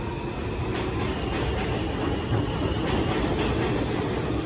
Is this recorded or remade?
recorded